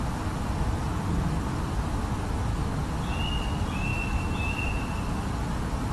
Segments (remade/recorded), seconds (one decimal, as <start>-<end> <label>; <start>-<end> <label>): 0.0-5.9 recorded